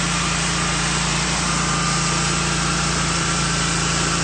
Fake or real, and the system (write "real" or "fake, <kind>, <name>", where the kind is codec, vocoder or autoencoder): fake, vocoder, BigVGAN v2